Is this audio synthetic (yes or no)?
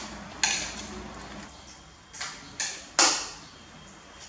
no